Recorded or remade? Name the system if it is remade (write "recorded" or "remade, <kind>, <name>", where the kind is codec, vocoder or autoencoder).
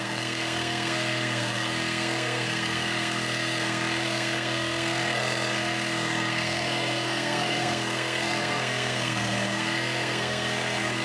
remade, codec, SNAC